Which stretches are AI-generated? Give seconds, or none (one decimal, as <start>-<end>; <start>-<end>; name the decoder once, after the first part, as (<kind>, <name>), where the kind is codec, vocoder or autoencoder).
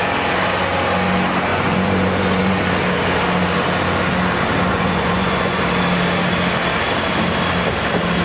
1.5-2.6 (vocoder, Vocos); 4.7-5.6